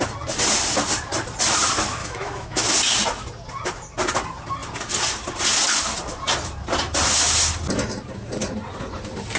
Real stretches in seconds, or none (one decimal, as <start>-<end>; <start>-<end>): 0.0-2.0; 2.6-9.4